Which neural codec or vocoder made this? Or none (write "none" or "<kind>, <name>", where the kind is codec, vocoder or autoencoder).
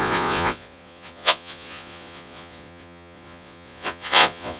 vocoder, Vocos